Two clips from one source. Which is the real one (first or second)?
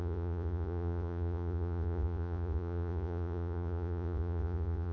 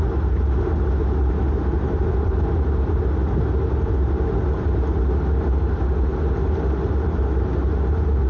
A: second